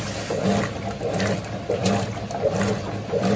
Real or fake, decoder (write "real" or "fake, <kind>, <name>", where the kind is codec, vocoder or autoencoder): real